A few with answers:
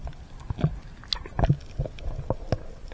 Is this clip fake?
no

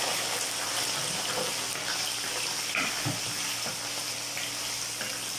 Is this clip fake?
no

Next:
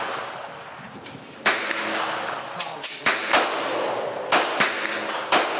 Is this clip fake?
no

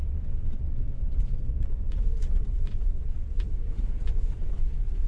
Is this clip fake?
yes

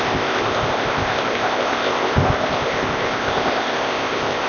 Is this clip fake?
yes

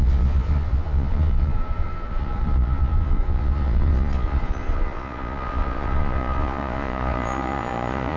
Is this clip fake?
yes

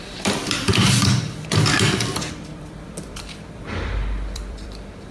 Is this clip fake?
yes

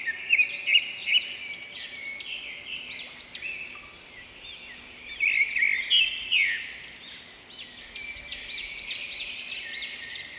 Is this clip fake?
no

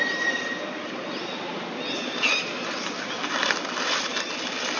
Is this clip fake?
no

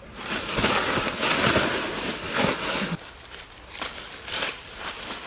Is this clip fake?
no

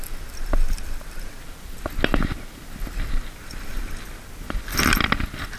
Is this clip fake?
no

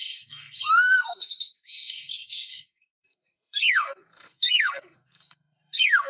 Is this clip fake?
yes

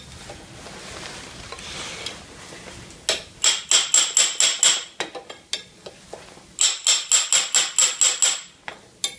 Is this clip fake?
no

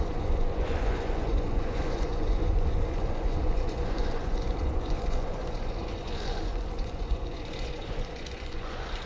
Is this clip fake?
yes